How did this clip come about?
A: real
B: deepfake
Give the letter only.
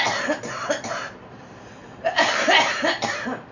B